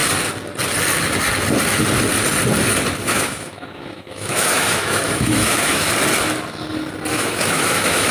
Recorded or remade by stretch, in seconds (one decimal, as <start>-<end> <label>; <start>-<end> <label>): 0.0-3.0 recorded; 3.0-5.9 remade; 5.9-7.1 recorded; 7.1-8.1 remade